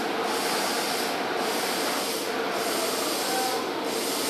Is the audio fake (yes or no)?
no